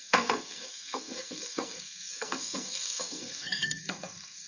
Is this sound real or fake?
fake